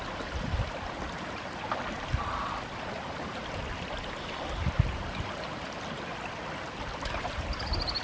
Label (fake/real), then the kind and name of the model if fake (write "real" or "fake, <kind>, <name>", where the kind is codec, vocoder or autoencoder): real